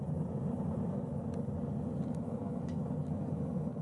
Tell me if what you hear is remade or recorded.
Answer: recorded